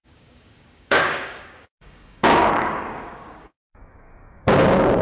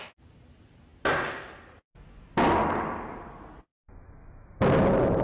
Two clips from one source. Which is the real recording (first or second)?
second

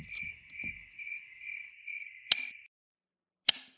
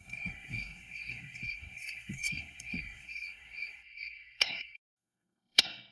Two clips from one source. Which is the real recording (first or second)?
first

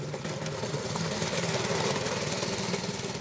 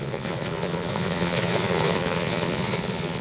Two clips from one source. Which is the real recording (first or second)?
first